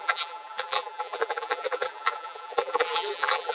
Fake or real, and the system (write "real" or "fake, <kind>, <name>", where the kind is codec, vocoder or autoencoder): fake, vocoder, BigVGAN v2